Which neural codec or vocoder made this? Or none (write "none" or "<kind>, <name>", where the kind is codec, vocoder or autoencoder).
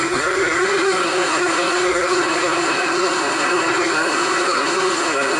codec, SNAC